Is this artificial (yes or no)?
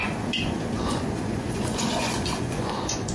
yes